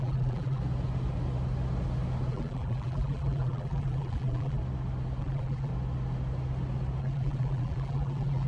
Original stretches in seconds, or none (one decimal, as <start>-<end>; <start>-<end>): 0.6-2.3; 4.6-5.2; 5.7-7.0